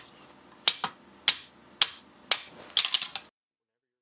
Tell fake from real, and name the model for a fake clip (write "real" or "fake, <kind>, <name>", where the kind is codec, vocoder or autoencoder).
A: real